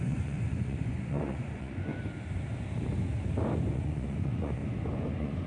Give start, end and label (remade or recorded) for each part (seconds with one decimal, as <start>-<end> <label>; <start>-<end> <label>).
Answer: 0.0-1.9 remade; 1.9-3.7 recorded; 3.7-4.6 remade; 4.6-5.1 recorded; 5.1-5.5 remade